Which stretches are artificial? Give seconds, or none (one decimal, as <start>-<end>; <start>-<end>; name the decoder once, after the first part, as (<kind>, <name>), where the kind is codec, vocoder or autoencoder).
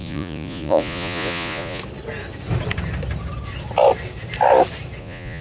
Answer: 0.0-1.8 (vocoder, Vocos); 5.0-5.4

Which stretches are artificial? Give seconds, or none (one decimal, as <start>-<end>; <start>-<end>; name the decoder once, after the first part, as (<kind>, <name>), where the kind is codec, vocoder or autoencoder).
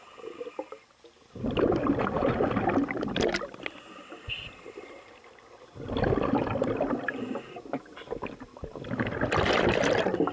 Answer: none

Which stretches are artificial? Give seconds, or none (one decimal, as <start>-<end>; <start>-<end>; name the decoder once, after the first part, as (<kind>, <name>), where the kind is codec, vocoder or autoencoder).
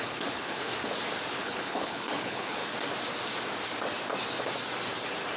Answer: 0.0-0.7 (codec, HILCodec); 1.4-2.6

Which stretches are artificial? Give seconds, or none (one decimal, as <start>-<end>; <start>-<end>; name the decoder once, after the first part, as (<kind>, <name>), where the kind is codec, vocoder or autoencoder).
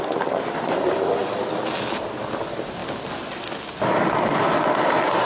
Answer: none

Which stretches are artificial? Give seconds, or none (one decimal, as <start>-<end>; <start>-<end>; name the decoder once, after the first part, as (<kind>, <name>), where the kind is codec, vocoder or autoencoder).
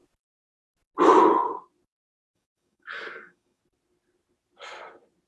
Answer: 2.1-3.6 (codec, DAC)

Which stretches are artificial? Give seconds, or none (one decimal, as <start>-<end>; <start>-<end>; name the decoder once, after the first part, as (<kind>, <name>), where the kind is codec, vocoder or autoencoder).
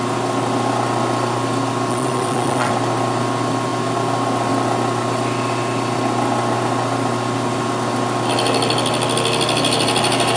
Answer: 1.9-2.7 (vocoder, WaveNeXt)